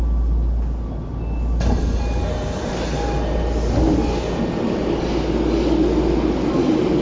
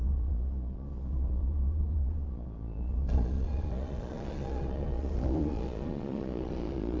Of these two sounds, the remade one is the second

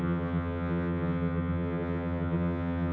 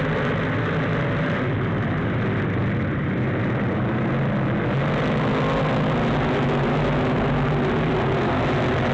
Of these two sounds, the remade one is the first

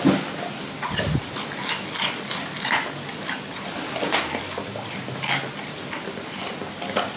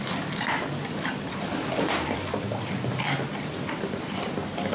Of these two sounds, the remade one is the second